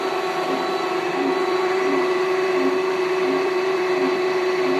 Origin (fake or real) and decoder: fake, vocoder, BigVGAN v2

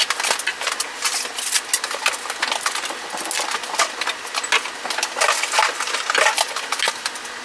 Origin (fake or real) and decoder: real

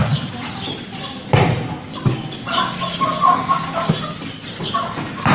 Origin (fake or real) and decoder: real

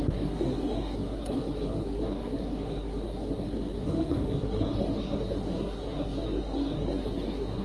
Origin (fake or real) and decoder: fake, codec, SNAC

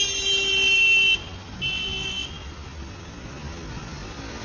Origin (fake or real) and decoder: real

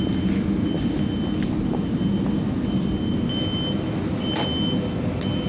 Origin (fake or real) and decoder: real